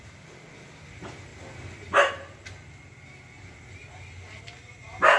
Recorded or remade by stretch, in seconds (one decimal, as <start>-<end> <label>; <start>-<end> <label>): 0.0-5.2 recorded